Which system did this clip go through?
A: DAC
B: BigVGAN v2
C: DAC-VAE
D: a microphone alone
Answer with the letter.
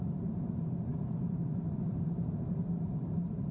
B